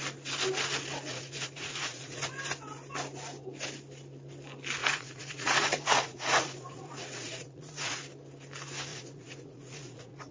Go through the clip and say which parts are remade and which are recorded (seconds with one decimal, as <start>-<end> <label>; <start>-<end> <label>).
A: 0.0-1.1 recorded; 1.1-2.3 remade; 2.3-4.8 recorded; 4.8-8.0 remade; 8.0-8.9 recorded; 8.9-10.3 remade